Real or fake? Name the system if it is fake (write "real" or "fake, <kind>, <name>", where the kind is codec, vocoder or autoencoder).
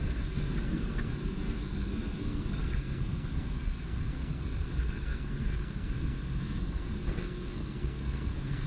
fake, codec, SNAC